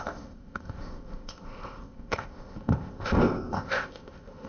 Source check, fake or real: fake